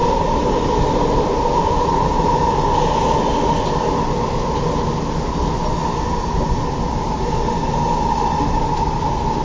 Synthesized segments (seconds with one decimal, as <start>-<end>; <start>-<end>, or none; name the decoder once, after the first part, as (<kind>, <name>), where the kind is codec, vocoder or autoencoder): 0.0-2.5 (vocoder, BigVGAN v2)